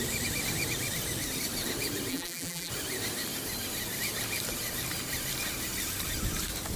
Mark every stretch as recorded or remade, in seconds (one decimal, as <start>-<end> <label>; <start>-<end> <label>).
0.0-2.1 recorded; 2.1-2.7 remade; 2.7-6.8 recorded